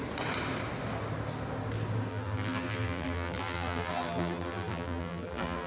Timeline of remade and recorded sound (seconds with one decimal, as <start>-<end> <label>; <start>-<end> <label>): 0.0-2.1 recorded; 2.1-5.7 remade